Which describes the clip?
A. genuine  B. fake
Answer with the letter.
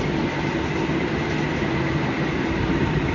A